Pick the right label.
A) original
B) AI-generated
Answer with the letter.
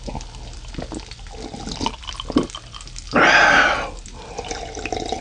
A